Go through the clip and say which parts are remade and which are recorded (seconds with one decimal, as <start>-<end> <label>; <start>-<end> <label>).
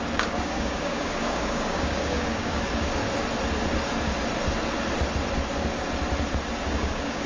0.0-3.0 remade; 3.0-6.6 recorded; 6.6-7.3 remade